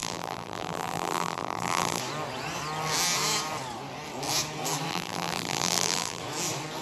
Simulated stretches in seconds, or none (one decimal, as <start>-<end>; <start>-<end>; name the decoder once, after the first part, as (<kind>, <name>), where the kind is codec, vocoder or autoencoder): 0.0-2.0 (vocoder, BigVGAN v2); 4.9-6.2